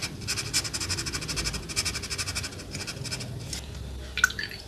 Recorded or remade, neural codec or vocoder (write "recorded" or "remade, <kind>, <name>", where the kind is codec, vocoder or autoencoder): recorded